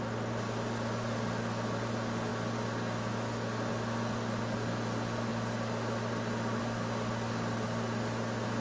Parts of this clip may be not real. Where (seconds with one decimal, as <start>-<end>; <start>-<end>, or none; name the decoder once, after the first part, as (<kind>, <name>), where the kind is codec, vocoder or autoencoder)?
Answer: none

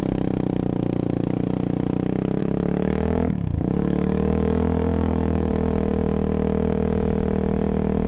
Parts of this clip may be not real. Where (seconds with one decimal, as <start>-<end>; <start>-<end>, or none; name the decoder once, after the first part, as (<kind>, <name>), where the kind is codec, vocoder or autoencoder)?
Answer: 2.4-5.5 (codec, DAC)

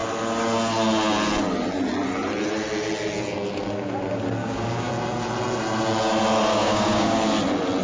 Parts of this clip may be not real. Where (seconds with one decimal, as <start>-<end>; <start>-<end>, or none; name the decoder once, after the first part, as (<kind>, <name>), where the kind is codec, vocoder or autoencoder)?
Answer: 4.4-4.9 (codec, DAC); 6.5-7.2

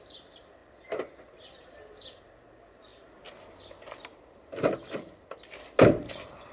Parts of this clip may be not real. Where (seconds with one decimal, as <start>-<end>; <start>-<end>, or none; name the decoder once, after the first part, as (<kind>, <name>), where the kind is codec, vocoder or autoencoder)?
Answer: none

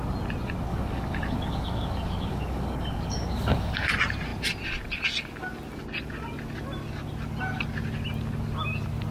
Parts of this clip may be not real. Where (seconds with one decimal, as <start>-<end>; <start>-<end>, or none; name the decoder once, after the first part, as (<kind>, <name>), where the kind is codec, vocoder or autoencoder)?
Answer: 0.7-3.9 (codec, DAC)